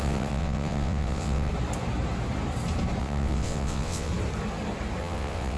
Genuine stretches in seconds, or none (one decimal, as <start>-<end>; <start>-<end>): 1.5-3.0; 4.1-5.0